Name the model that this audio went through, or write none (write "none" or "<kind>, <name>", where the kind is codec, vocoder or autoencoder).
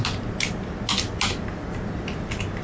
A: none